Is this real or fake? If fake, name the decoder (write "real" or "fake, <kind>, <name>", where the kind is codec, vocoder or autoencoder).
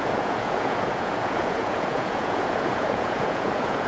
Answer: fake, vocoder, Vocos